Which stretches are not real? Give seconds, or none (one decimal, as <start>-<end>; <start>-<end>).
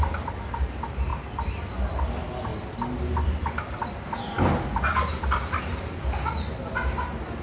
none